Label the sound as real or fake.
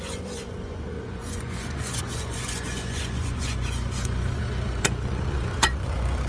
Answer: fake